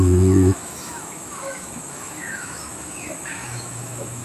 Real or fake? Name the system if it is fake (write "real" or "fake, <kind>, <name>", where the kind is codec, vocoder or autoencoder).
fake, autoencoder, DAC-VAE